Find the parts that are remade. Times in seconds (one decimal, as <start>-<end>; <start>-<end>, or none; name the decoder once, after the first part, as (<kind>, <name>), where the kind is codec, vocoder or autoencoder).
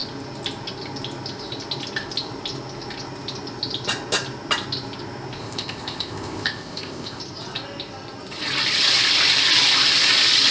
5.4-7.2 (codec, ZipCodec)